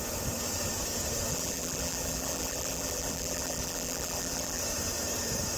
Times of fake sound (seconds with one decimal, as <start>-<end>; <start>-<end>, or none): 1.3-4.6